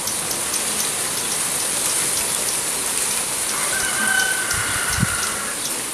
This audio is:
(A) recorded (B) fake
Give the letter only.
A